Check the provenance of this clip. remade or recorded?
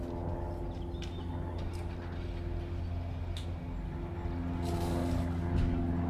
recorded